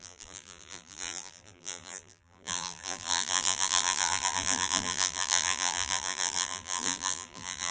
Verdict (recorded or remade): remade